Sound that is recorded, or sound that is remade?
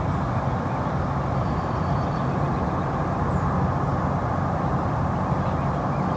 recorded